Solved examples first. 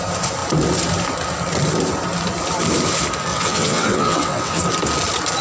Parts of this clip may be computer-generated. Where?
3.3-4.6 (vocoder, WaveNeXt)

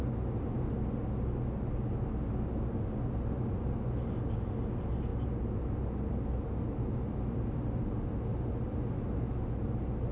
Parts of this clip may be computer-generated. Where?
none

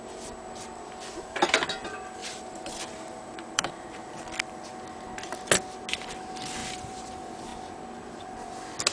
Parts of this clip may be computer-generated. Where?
2.2-4.0 (vocoder, BigVGAN v2); 6.6-7.1

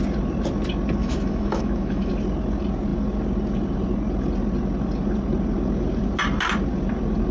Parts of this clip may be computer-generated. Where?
1.0-2.1 (autoencoder, DAC-VAE)

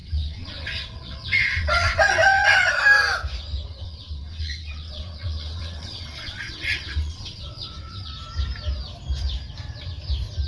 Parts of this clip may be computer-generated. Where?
0.0-2.7 (vocoder, WaveNeXt); 3.7-8.1